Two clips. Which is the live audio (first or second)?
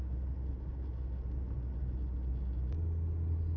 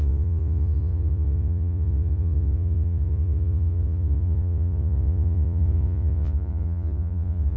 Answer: first